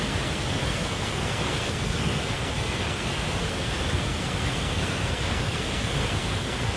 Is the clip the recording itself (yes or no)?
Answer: no